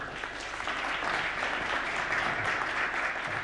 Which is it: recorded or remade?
recorded